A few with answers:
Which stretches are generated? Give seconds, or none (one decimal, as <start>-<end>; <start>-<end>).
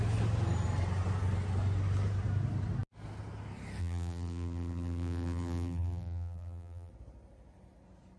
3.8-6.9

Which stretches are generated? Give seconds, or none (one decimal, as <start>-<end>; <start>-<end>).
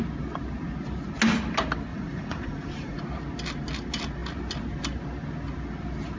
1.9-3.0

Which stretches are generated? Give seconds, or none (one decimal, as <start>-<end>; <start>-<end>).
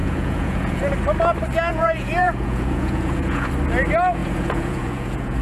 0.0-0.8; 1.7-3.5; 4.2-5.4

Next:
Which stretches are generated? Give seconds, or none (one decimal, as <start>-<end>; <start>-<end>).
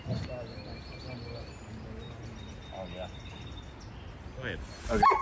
none